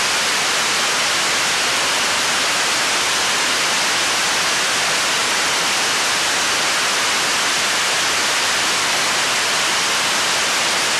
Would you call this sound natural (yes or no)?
yes